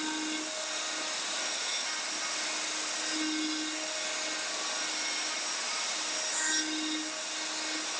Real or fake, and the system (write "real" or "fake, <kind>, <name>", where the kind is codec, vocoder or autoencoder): real